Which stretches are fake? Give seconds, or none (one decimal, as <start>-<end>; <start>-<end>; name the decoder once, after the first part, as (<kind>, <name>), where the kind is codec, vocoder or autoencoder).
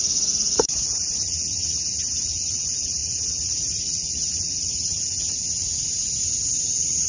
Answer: 0.0-6.0 (vocoder, Vocos); 6.6-7.1